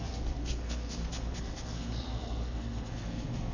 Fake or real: fake